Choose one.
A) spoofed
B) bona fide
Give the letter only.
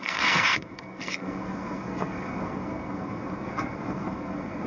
A